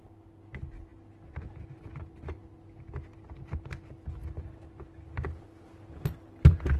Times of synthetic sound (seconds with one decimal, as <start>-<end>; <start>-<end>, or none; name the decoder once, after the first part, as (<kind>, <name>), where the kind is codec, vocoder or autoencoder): none

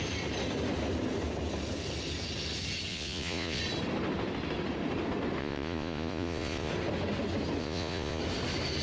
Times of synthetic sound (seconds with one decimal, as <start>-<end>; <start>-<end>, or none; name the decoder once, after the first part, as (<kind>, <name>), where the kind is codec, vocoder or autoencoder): 2.9-3.6 (vocoder, Vocos); 5.4-6.7; 7.6-8.2

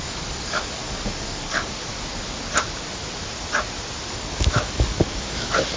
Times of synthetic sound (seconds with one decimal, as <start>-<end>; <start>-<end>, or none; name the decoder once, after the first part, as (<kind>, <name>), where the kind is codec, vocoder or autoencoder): 0.0-1.9 (codec, DAC); 4.1-5.8